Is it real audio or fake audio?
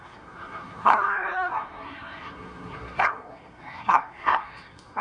fake